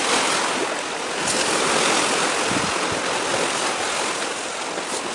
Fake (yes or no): no